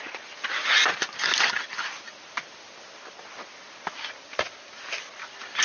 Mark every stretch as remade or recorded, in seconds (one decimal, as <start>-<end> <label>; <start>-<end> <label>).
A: 0.0-5.6 recorded